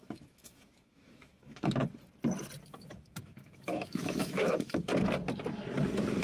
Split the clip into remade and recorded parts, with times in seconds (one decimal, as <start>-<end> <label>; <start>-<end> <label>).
0.0-1.8 remade; 1.8-2.7 recorded; 2.7-4.9 remade; 4.9-6.2 recorded